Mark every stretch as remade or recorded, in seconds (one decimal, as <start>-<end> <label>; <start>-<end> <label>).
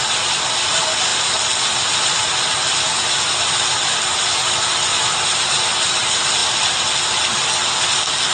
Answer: 0.0-6.4 recorded; 6.4-7.4 remade; 7.4-8.3 recorded